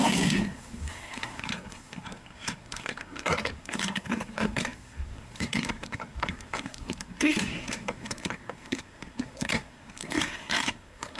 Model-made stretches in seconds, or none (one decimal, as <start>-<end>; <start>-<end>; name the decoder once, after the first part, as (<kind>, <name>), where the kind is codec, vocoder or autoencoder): 0.0-11.2 (codec, SNAC)